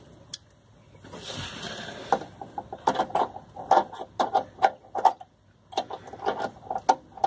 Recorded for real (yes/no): yes